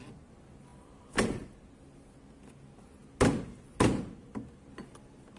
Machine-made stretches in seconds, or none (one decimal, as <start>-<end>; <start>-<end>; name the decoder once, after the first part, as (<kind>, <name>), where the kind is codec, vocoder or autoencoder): 0.7-1.7 (vocoder, BigVGAN v2)